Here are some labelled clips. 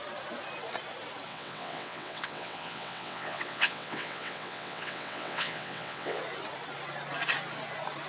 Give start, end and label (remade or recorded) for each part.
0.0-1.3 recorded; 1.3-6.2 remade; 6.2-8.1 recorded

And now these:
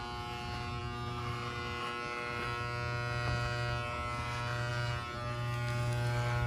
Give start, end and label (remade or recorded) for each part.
0.0-6.5 recorded

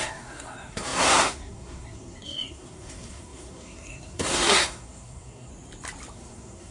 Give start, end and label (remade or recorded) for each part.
0.0-5.5 remade; 5.5-6.1 recorded; 6.1-6.7 remade

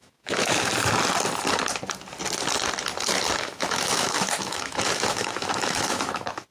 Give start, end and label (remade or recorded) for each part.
0.0-0.7 remade; 0.7-3.4 recorded; 3.4-6.5 remade